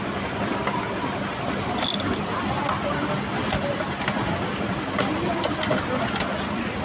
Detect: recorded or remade recorded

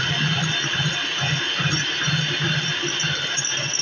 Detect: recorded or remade recorded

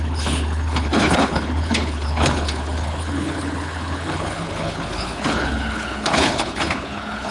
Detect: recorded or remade remade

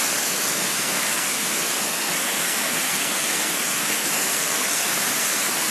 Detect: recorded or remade remade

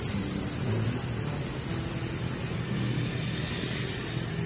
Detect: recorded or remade recorded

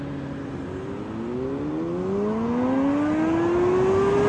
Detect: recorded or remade recorded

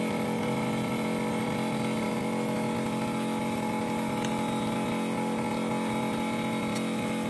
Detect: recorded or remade recorded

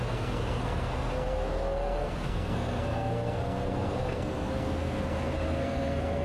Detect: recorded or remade remade